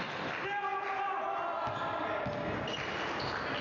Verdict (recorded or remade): recorded